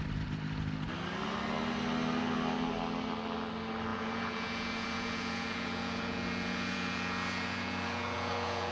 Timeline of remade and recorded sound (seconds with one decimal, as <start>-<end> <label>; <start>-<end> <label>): 0.0-3.9 recorded; 3.9-8.7 remade